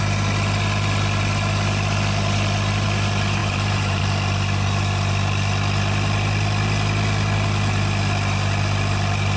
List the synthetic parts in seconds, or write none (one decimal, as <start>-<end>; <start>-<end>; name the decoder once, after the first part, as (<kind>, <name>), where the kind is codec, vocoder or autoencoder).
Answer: 3.4-4.0 (vocoder, BigVGAN v2)